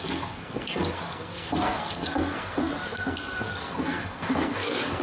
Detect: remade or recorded remade